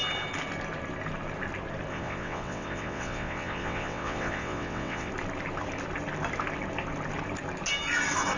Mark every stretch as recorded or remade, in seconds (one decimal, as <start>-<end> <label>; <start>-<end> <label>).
0.0-1.9 recorded; 1.9-5.1 remade; 5.1-8.4 recorded